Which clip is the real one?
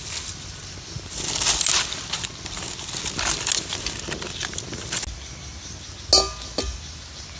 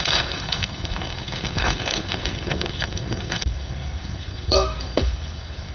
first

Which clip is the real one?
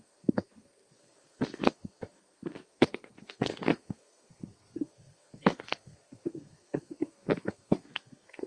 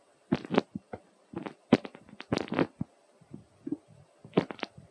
second